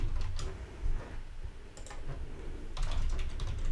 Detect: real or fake real